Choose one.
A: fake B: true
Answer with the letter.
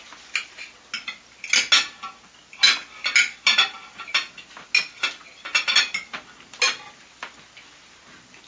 B